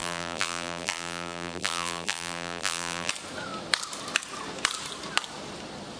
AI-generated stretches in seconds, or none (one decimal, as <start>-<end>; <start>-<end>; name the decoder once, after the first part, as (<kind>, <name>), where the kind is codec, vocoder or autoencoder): 0.0-3.1 (vocoder, BigVGAN v2)